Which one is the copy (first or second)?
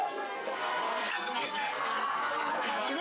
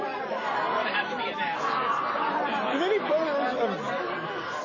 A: first